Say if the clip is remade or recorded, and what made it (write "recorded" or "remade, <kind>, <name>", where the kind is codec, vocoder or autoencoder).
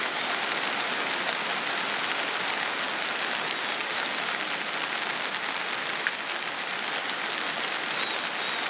recorded